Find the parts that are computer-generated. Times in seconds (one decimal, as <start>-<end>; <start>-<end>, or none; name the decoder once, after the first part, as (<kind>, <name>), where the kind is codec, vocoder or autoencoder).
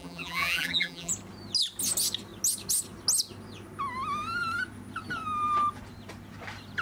0.0-1.1 (vocoder, BigVGAN v2)